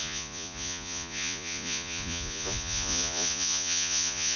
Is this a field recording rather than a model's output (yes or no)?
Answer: no